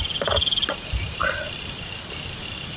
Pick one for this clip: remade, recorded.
recorded